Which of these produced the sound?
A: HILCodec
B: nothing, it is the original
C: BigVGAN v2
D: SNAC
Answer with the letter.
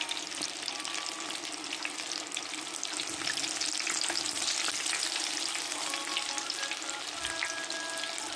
B